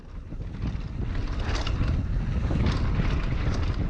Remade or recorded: recorded